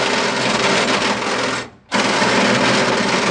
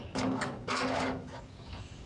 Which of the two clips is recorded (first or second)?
first